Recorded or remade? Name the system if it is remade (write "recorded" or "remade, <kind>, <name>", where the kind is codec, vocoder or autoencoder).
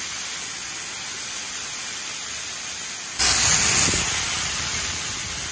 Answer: recorded